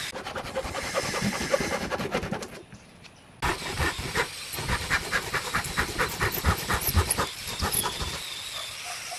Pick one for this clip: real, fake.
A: real